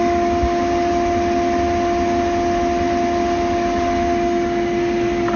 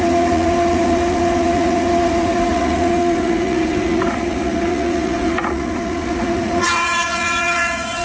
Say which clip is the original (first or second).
first